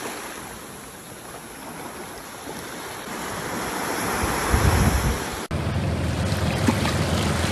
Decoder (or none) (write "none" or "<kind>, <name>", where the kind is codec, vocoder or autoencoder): none